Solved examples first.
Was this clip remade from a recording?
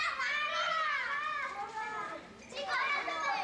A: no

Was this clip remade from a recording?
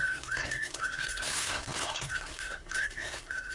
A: yes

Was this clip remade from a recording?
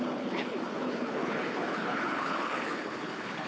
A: yes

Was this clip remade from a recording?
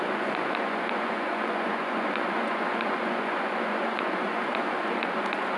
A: yes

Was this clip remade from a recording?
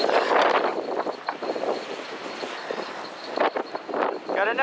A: no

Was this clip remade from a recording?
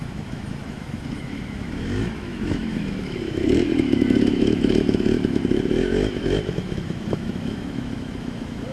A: yes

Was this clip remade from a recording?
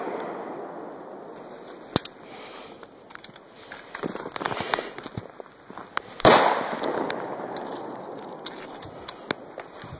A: no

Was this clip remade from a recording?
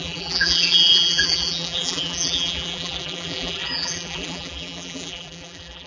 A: yes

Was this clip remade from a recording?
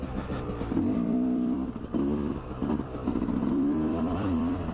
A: yes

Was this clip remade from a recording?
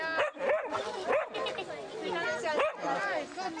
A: no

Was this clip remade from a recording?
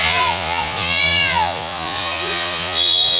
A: yes